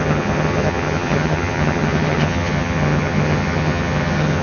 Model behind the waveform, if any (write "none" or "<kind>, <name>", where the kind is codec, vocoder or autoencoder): vocoder, HiFi-GAN